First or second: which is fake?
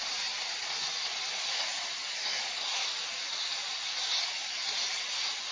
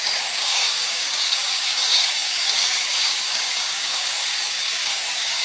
second